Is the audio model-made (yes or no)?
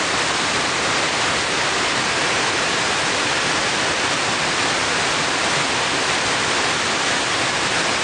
no